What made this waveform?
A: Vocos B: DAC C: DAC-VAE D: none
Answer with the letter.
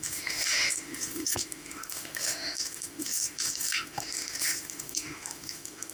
C